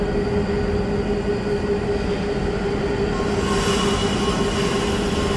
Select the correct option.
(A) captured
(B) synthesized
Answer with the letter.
A